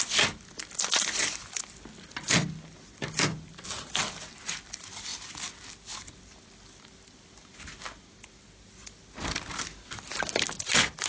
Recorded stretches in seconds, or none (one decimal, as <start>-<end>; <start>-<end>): 0.0-11.1